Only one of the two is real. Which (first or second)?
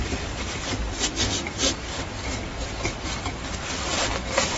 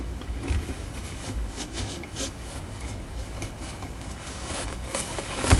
first